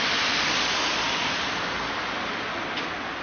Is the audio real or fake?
real